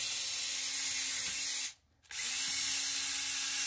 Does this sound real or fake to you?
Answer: real